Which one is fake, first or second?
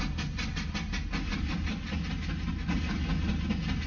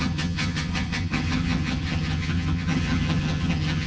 second